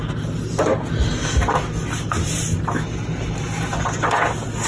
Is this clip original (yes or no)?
yes